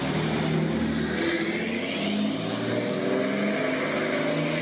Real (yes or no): yes